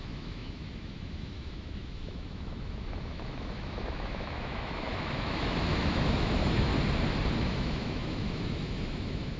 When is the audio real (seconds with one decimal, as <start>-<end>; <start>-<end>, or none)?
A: 6.7-7.4